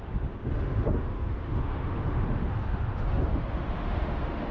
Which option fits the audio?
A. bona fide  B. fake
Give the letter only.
B